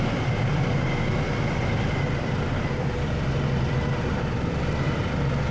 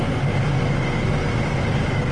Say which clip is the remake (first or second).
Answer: first